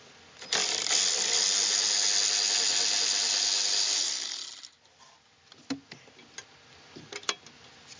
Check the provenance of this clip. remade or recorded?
recorded